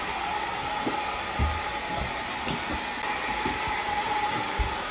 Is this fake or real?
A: real